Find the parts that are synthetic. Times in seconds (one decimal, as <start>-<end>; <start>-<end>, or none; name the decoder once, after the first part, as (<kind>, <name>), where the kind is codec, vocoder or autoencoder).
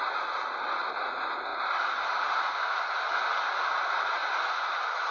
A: none